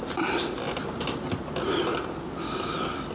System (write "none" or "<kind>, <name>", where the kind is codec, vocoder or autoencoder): none